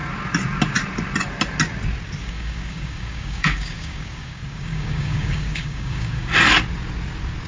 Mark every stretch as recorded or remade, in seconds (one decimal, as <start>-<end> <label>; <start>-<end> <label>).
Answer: 0.0-2.2 recorded; 2.2-6.3 remade; 6.3-7.5 recorded